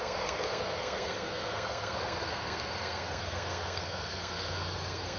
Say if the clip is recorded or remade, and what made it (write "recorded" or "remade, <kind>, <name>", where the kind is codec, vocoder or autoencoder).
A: remade, codec, SNAC